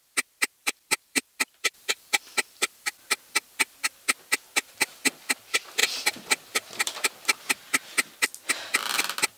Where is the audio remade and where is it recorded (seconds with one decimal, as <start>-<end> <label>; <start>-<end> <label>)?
0.0-0.6 recorded; 0.6-4.2 remade; 4.2-5.8 recorded; 5.8-7.5 remade; 7.5-9.4 recorded